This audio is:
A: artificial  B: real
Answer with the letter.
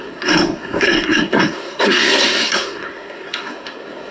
A